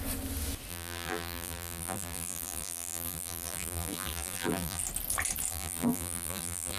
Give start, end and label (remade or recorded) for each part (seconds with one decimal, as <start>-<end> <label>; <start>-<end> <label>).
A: 0.0-0.7 recorded; 0.7-4.8 remade; 4.8-5.5 recorded; 5.5-6.8 remade